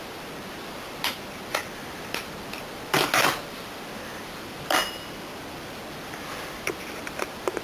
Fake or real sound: fake